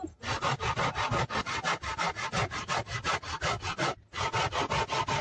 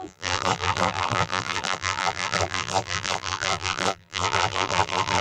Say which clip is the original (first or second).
first